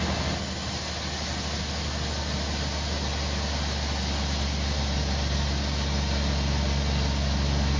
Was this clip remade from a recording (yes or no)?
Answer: no